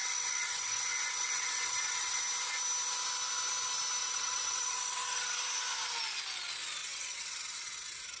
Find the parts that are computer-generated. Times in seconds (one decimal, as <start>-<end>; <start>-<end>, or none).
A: 0.0-2.2; 4.0-5.4; 6.8-8.2